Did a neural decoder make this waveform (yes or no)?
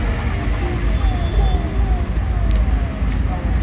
no